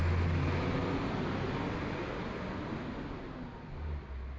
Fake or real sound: real